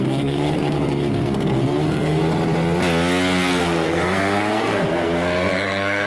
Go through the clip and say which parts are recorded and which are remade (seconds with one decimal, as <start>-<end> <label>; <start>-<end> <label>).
0.0-2.2 remade; 2.2-3.6 recorded; 3.6-6.1 remade